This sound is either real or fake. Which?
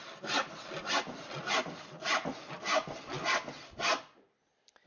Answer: real